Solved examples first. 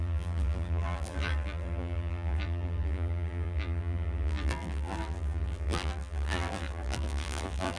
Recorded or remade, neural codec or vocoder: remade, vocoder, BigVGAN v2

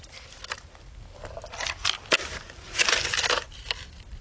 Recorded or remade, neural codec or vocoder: recorded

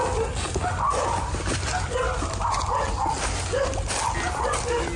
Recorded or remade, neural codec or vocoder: recorded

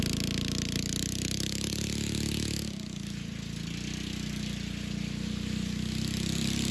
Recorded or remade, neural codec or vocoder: recorded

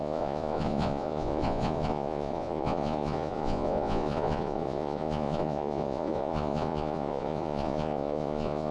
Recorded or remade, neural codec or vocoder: remade, vocoder, Vocos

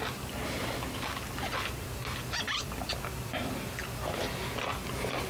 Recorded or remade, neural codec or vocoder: recorded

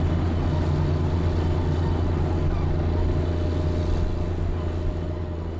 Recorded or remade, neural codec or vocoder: recorded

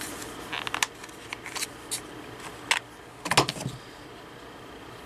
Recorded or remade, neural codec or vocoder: recorded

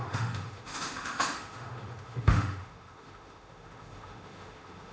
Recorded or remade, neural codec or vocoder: remade, autoencoder, DAC-VAE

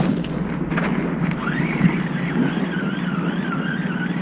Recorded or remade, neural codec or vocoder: recorded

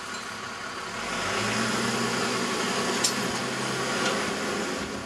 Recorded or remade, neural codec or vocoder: recorded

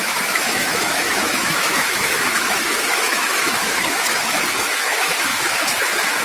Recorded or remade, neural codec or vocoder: remade, autoencoder, DAC-VAE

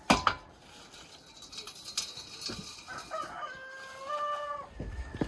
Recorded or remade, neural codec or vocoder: recorded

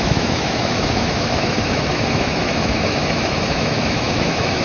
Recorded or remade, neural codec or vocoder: remade, autoencoder, DAC-VAE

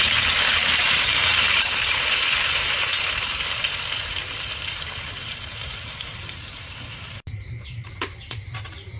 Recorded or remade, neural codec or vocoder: remade, vocoder, BigVGAN v2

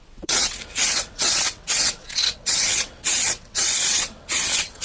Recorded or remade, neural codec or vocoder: remade, vocoder, WaveNeXt